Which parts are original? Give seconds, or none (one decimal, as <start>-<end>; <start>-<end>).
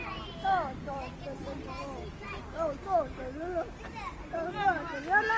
0.0-5.4